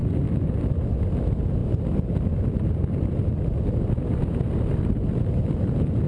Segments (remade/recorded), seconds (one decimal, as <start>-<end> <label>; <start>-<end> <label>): 0.0-6.1 recorded